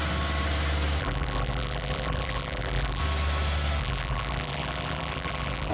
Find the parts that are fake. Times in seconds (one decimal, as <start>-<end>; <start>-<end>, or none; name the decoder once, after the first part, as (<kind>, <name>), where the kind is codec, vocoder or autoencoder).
1.0-3.0 (vocoder, BigVGAN v2); 3.8-5.7